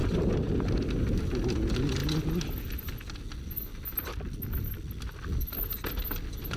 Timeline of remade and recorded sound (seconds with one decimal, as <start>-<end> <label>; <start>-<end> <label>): 0.0-6.6 recorded